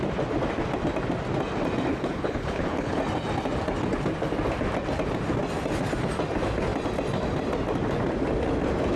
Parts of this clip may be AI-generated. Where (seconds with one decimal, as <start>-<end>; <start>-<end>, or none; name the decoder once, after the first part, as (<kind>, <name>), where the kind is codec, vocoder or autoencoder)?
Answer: 1.9-3.0 (codec, HILCodec)